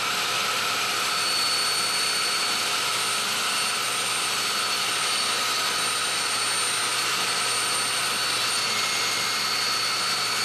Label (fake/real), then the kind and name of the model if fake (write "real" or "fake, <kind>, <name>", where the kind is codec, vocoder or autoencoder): real